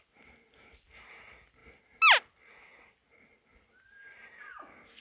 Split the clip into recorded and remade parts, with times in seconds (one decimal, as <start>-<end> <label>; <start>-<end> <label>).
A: 0.0-5.0 recorded